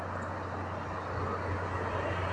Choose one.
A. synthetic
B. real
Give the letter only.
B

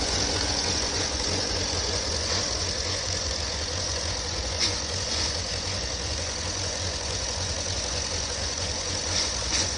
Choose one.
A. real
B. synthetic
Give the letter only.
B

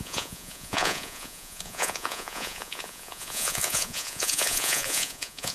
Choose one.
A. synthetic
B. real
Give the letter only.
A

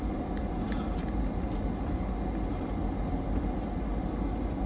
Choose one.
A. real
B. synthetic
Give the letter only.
A